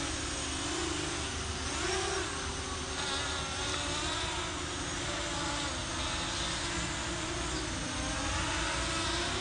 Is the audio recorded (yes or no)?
yes